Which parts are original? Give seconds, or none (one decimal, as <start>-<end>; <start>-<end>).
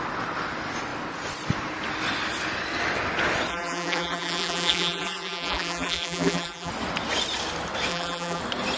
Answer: 0.0-3.5; 6.7-7.9; 8.4-8.8